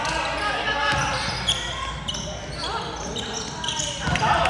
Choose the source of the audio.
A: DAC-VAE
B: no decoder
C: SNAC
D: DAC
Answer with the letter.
B